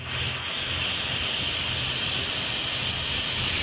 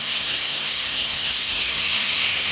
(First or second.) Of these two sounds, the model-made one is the second